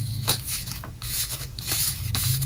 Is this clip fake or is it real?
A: fake